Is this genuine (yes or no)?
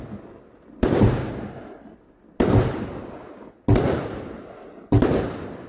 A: yes